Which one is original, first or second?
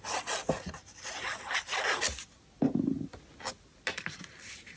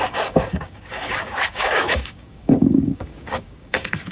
first